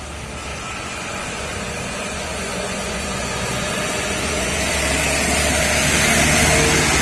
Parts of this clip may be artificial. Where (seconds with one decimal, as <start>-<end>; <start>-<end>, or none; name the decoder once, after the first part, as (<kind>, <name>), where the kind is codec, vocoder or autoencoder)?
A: 0.5-4.6 (vocoder, Vocos)